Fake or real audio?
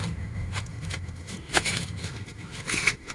fake